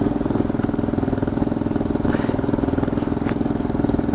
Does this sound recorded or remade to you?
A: recorded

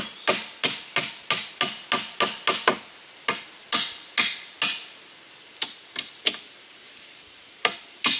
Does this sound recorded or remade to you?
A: recorded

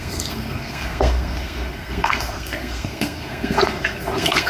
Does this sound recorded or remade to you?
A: remade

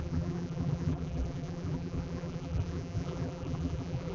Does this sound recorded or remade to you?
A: remade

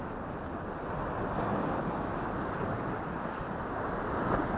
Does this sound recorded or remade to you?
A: recorded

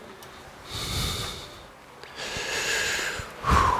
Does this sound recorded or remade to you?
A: recorded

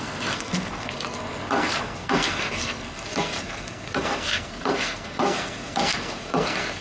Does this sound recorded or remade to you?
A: remade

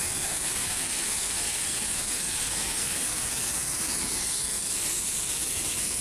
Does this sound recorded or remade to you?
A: remade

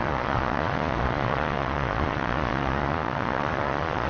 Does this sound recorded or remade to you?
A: remade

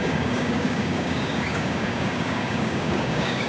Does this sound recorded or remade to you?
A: remade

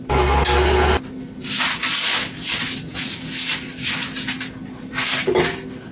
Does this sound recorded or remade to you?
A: recorded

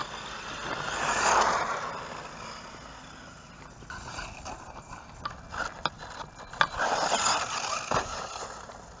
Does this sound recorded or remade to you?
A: recorded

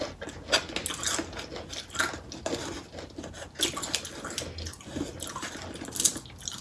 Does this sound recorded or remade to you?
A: recorded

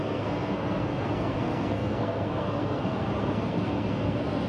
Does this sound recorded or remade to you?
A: remade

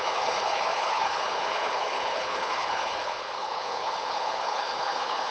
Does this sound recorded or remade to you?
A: remade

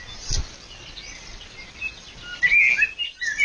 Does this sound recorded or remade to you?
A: recorded